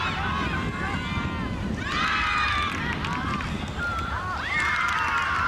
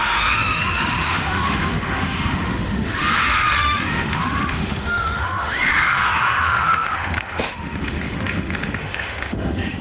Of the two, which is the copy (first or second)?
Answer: second